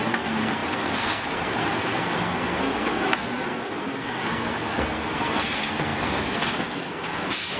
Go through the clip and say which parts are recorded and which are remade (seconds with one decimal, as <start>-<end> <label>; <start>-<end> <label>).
0.0-7.6 remade